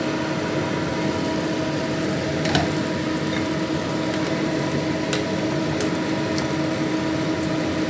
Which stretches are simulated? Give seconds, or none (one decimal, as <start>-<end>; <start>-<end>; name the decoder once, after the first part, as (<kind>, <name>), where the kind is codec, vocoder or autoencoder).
none

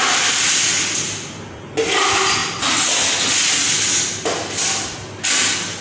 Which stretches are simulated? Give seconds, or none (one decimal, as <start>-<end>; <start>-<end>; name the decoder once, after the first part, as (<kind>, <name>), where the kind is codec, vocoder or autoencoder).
none

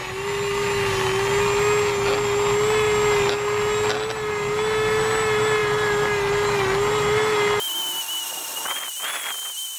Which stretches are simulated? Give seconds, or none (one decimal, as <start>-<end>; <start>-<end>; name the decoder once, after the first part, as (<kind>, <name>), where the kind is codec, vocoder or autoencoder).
none

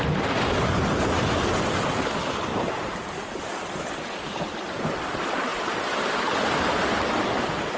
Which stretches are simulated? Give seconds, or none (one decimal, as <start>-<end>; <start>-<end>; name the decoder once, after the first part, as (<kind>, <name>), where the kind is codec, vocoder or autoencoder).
2.5-3.3 (vocoder, BigVGAN v2)

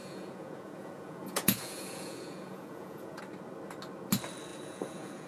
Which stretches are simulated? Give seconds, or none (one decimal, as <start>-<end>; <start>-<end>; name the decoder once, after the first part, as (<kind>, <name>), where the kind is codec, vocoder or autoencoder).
0.0-3.2 (vocoder, Vocos); 4.5-5.3

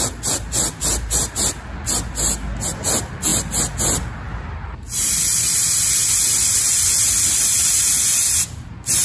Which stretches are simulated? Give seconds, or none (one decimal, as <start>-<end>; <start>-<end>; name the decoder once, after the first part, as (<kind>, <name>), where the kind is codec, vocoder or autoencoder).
none